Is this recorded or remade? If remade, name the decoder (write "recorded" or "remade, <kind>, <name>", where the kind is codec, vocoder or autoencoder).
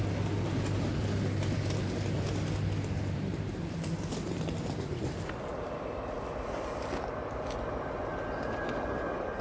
recorded